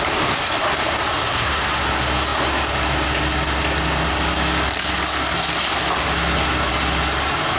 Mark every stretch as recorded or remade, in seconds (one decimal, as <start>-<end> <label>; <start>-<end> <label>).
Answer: 0.0-1.2 recorded; 1.2-1.7 remade; 1.7-7.6 recorded